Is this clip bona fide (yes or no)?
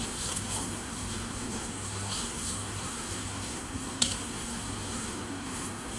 no